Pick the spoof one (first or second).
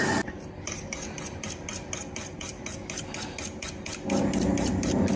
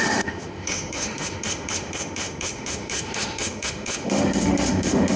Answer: second